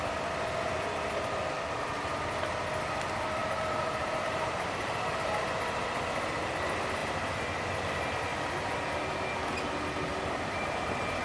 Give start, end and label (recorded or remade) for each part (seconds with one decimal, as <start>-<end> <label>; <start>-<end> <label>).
0.0-3.4 recorded; 3.4-5.1 remade; 5.1-10.1 recorded; 10.1-11.2 remade